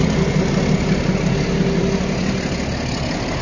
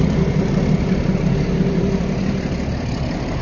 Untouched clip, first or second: first